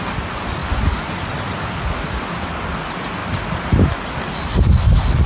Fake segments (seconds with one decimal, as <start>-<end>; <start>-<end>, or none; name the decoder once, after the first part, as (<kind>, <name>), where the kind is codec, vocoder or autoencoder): 3.2-3.9 (vocoder, BigVGAN v2)